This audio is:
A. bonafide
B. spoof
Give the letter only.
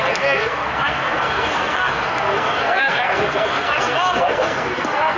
B